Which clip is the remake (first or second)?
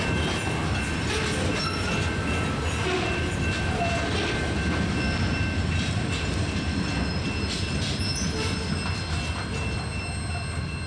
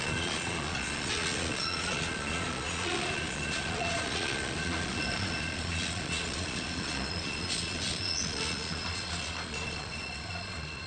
second